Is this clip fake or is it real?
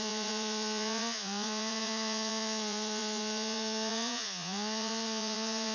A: fake